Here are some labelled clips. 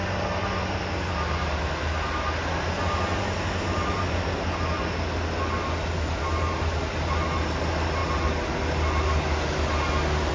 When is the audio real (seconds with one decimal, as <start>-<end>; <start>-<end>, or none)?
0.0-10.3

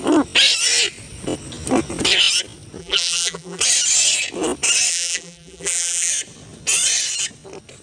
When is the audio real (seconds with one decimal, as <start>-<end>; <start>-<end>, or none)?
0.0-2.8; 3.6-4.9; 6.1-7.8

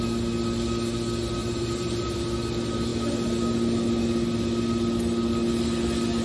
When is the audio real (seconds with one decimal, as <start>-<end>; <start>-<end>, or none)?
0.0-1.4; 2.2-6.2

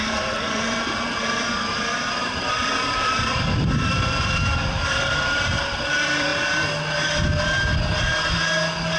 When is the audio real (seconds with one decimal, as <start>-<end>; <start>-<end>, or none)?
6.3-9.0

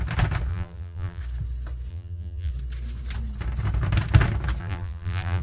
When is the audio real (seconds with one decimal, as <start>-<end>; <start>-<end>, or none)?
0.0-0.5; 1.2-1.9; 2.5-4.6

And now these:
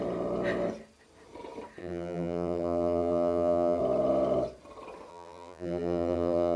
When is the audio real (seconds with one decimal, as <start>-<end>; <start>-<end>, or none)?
0.0-1.8; 3.8-5.1